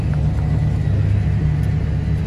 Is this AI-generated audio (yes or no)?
no